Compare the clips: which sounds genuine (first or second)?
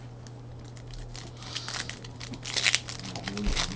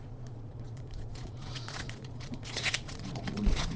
first